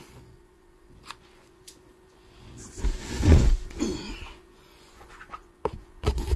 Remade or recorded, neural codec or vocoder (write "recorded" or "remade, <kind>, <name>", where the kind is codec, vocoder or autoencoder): remade, vocoder, Vocos